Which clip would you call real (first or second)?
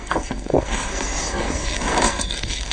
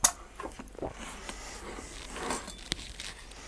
second